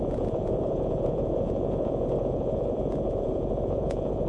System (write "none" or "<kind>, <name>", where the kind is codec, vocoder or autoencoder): vocoder, Vocos